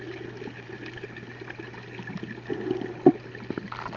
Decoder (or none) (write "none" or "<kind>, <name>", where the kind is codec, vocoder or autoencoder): none